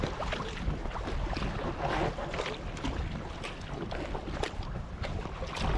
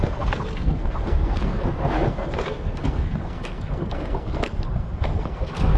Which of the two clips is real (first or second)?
first